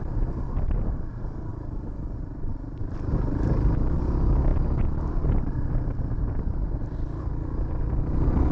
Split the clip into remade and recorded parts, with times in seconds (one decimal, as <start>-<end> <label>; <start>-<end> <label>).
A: 0.0-1.5 recorded; 1.5-4.0 remade; 4.0-8.5 recorded